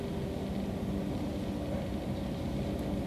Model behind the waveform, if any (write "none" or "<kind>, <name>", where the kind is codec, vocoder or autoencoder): none